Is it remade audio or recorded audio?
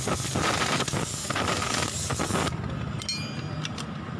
recorded